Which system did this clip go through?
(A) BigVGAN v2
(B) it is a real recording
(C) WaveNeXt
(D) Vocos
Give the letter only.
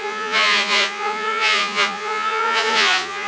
D